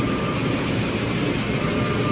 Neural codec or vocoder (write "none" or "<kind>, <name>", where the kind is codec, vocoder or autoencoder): none